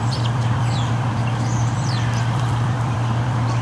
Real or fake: fake